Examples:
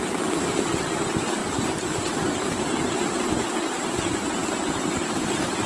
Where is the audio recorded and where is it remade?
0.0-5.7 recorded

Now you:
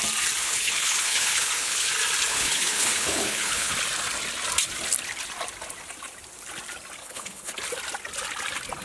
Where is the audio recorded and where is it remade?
0.0-0.4 recorded; 0.4-1.9 remade; 1.9-2.3 recorded; 2.3-3.7 remade; 3.7-7.0 recorded; 7.0-7.6 remade; 7.6-8.8 recorded

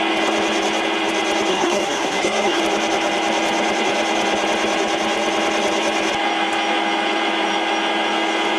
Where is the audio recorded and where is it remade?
0.0-1.5 recorded; 1.5-2.6 remade; 2.6-8.6 recorded

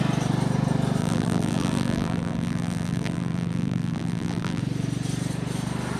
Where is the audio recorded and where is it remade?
0.0-1.0 recorded; 1.0-4.6 remade; 4.6-6.0 recorded